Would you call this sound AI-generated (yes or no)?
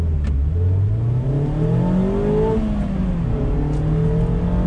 no